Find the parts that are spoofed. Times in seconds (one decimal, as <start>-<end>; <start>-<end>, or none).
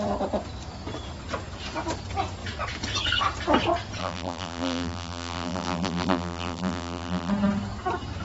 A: 4.0-7.3